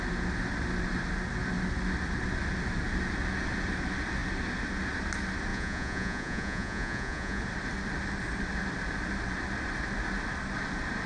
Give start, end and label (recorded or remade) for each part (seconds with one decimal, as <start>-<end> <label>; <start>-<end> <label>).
0.0-5.5 recorded; 5.5-7.4 remade; 7.4-11.1 recorded